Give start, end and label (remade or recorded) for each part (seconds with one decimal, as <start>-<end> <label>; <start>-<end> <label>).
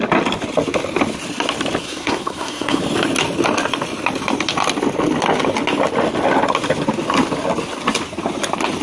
0.0-1.8 recorded; 1.8-2.8 remade; 2.8-8.8 recorded